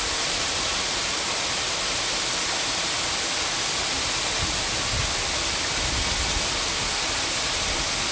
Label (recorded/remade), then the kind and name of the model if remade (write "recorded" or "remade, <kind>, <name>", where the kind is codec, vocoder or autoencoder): recorded